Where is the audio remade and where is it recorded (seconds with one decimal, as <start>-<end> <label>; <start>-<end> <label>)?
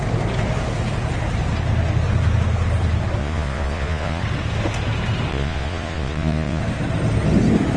0.0-3.2 recorded; 3.2-4.2 remade; 4.2-5.3 recorded; 5.3-6.6 remade; 6.6-7.8 recorded